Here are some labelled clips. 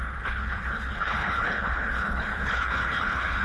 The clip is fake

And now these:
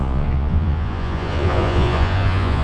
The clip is fake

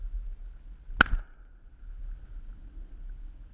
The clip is real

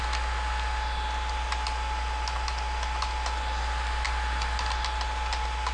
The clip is real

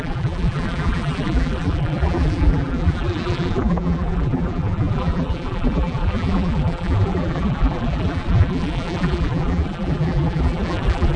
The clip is fake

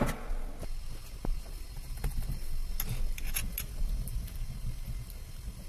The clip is real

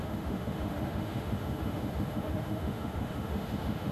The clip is fake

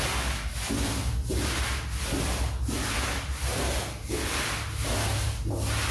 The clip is real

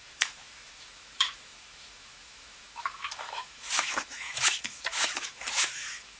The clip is fake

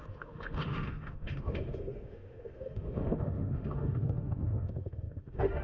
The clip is fake